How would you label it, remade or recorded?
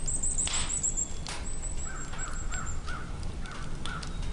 recorded